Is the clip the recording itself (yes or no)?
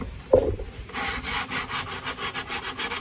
yes